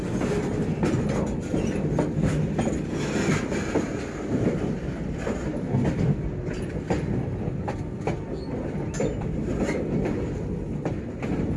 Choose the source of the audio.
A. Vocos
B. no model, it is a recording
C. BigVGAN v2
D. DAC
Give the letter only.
B